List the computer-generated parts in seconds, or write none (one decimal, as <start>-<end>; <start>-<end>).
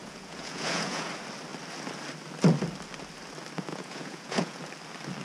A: 0.0-1.1; 3.7-4.6